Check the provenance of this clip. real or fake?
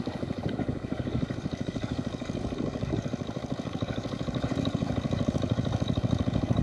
fake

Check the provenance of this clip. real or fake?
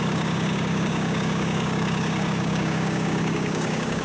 fake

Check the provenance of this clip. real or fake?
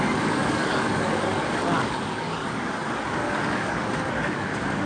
fake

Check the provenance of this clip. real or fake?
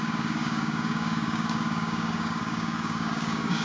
fake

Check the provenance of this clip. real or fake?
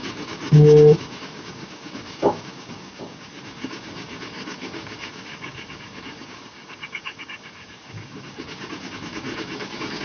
fake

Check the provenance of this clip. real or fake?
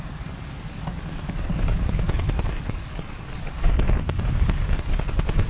fake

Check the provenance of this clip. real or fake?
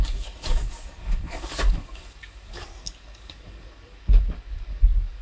fake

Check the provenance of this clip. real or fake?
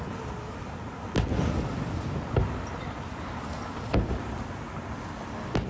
real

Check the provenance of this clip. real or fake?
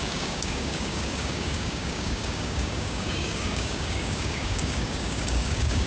fake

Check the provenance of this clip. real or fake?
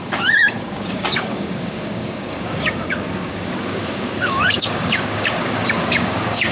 fake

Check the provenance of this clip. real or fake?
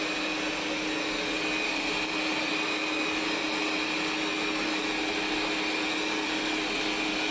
real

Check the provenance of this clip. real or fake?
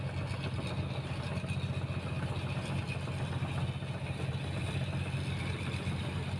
real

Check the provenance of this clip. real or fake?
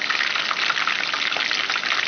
real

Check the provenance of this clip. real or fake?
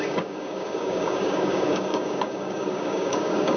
fake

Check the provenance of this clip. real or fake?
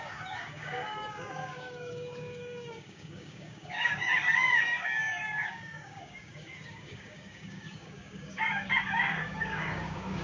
fake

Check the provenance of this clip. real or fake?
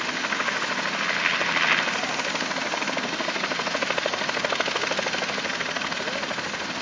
real